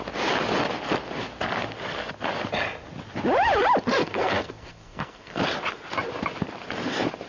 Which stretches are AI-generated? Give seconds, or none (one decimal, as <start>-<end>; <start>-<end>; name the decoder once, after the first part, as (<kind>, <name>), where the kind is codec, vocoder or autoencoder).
4.0-5.4 (codec, SNAC)

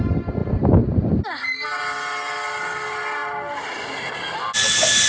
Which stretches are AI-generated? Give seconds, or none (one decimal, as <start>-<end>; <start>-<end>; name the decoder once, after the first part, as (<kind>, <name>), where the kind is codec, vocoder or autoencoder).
none

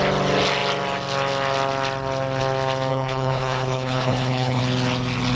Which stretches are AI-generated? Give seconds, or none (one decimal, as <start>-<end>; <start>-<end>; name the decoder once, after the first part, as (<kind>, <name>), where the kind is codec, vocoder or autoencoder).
2.9-4.6 (codec, HILCodec)

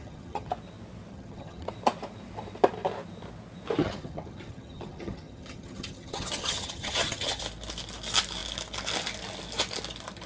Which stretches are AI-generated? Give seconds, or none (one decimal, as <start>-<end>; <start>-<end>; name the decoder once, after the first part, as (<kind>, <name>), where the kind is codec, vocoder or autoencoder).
0.0-0.5 (vocoder, HiFi-GAN); 1.1-1.7; 3.8-7.4

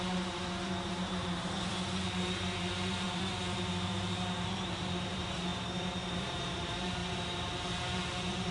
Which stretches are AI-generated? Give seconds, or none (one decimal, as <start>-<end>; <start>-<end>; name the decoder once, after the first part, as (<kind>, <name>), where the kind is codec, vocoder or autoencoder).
0.0-8.5 (vocoder, BigVGAN v2)

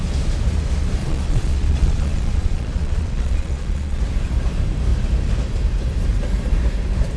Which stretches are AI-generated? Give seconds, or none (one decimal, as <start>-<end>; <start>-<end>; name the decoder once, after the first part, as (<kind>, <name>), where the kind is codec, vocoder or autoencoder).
1.0-4.0 (vocoder, Vocos)

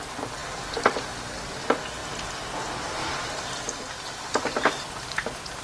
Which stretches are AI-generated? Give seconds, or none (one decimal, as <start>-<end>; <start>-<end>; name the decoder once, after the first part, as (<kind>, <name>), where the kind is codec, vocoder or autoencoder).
2.0-5.6 (vocoder, BigVGAN v2)